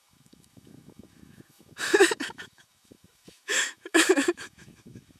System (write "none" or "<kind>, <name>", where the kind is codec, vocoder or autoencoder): autoencoder, DAC-VAE